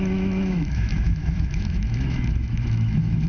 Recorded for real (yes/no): no